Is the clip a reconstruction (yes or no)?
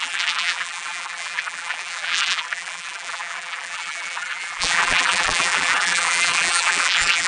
yes